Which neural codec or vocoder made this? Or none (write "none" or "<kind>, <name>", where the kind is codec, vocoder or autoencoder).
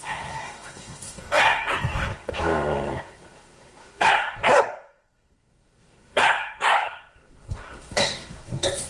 codec, SNAC